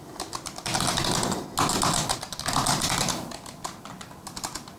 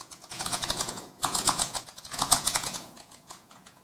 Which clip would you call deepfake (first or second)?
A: second